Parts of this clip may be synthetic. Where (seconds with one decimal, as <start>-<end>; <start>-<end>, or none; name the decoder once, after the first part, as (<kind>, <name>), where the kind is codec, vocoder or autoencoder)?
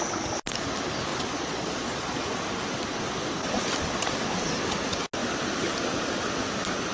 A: 1.1-2.2 (vocoder, Vocos)